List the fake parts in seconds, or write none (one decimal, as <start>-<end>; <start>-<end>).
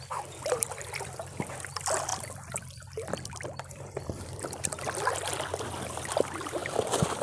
0.0-7.2